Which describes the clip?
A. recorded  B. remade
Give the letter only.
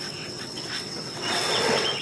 B